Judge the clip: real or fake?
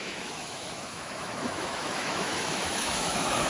fake